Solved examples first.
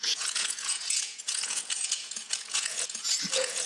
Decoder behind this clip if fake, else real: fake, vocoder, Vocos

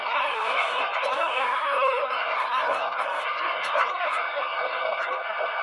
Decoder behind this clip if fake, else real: fake, codec, SNAC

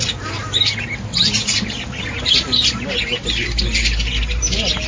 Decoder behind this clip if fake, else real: real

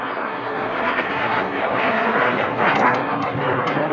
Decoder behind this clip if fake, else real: fake, codec, SNAC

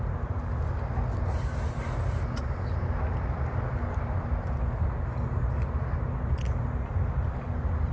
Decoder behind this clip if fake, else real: real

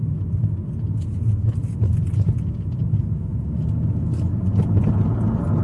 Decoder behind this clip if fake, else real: real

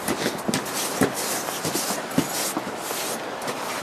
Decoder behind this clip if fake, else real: real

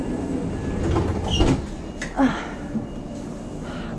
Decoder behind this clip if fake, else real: real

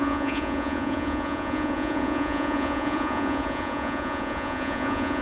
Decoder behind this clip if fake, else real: fake, vocoder, Vocos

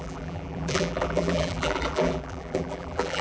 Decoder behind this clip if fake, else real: fake, vocoder, BigVGAN v2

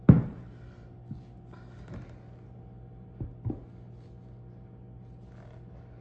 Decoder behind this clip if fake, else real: real